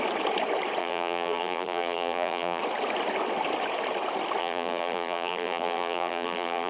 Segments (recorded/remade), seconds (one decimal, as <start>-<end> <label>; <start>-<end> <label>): 0.0-0.8 recorded; 0.8-2.6 remade; 2.6-4.4 recorded; 4.4-6.7 remade